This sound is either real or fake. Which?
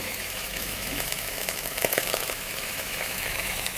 fake